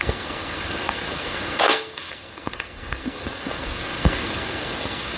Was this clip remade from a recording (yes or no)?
yes